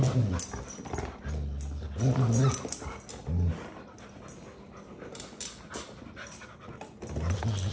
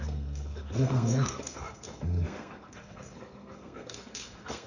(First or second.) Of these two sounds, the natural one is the first